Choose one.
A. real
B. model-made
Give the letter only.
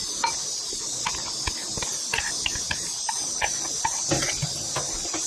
A